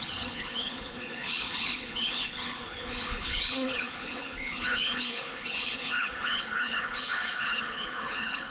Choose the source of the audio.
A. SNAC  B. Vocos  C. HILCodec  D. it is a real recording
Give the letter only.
C